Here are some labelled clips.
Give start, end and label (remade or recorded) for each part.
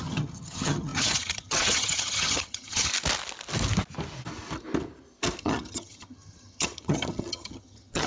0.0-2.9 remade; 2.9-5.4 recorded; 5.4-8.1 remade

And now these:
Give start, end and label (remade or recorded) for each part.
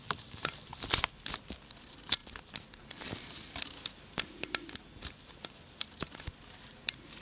0.0-0.7 remade; 0.7-1.7 recorded; 1.7-2.2 remade; 2.2-6.5 recorded; 6.5-7.2 remade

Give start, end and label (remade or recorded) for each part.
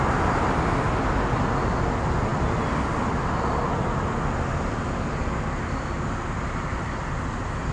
0.0-7.7 recorded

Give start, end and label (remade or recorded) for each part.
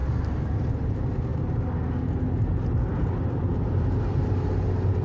0.0-5.0 recorded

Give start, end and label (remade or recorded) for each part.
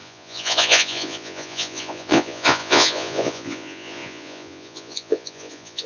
0.0-5.9 remade